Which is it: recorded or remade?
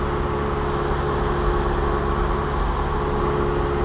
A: recorded